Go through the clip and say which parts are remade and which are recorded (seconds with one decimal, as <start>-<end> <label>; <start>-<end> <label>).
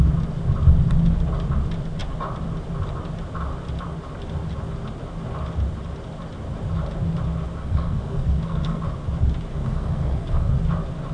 0.0-7.6 recorded; 7.6-8.8 remade; 8.8-9.5 recorded; 9.5-10.5 remade; 10.5-11.1 recorded